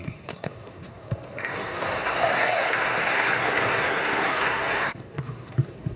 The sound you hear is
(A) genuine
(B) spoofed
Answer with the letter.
B